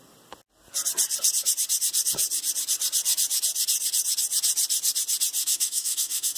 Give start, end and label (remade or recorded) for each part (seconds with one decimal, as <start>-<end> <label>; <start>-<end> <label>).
0.0-5.4 recorded; 5.4-6.4 remade